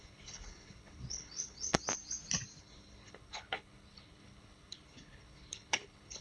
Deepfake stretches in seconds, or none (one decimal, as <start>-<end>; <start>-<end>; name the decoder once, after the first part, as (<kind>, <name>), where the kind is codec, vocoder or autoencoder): 0.0-1.8 (codec, HILCodec); 2.6-6.2